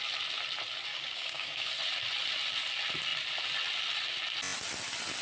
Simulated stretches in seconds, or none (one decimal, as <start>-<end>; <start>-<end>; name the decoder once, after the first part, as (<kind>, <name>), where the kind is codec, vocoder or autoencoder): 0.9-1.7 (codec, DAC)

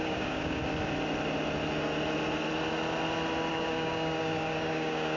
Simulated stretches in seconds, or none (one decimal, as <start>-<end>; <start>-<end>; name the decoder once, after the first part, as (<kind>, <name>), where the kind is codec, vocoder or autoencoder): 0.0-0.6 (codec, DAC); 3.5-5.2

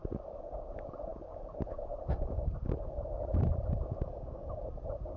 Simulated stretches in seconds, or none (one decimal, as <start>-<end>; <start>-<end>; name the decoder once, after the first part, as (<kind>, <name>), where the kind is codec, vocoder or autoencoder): 4.0-4.6 (codec, DAC)

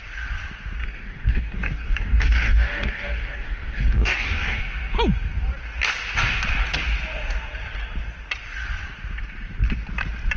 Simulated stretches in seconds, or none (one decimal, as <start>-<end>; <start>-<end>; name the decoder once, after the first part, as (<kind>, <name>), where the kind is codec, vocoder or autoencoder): 0.8-4.6 (codec, DAC)

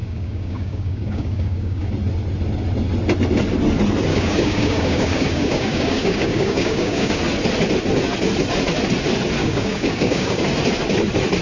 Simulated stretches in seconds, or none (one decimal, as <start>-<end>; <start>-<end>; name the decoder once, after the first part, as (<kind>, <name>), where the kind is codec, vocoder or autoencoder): 0.0-1.9 (codec, DAC); 4.1-7.2; 9.4-10.4

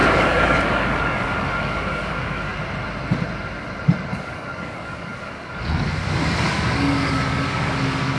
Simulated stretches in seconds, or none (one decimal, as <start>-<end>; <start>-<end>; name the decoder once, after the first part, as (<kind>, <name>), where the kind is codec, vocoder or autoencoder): 0.0-2.5 (codec, DAC); 4.1-8.2

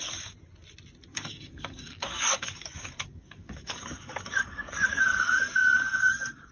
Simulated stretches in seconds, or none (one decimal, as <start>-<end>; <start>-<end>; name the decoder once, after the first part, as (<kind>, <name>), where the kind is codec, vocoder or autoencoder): 1.1-5.0 (codec, DAC)

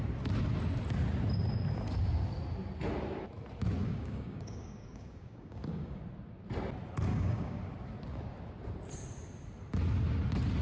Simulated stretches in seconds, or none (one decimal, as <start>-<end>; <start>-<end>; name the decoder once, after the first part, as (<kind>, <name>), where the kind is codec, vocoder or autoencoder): 3.8-6.0 (codec, DAC); 7.1-7.6